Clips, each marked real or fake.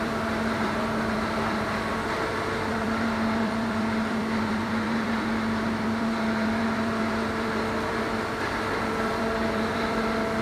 fake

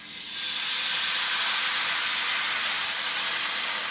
real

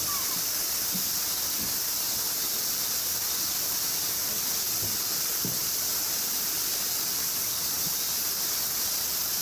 fake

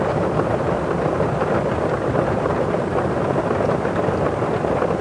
real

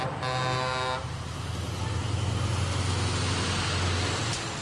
real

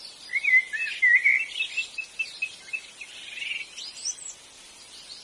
real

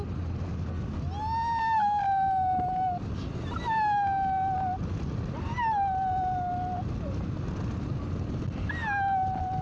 real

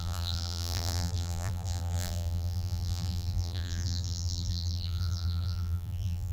fake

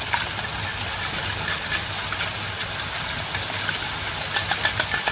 real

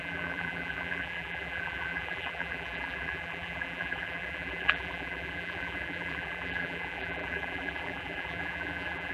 fake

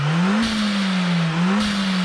real